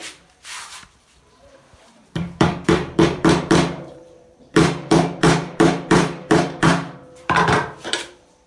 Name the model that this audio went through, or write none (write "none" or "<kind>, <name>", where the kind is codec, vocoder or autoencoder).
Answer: vocoder, BigVGAN v2